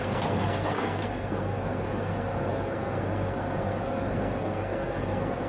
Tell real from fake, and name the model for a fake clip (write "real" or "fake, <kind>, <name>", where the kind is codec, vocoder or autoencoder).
fake, codec, SNAC